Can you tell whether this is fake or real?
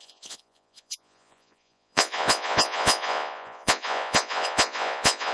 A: fake